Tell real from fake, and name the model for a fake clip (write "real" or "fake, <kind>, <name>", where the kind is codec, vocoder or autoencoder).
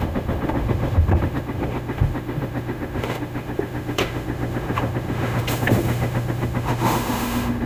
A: fake, autoencoder, DAC-VAE